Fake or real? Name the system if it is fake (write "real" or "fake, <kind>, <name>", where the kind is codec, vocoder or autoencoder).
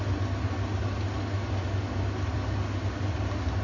real